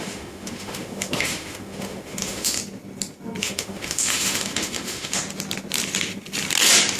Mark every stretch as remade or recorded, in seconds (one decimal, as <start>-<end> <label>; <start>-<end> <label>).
0.0-2.6 remade; 2.6-3.4 recorded; 3.4-5.2 remade; 5.2-7.0 recorded